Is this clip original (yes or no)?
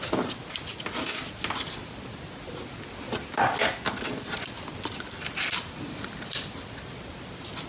yes